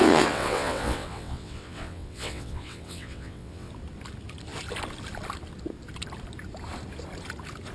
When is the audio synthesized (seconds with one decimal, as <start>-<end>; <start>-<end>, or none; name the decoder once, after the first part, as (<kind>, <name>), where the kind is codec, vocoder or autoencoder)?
0.0-3.7 (vocoder, WaveNeXt)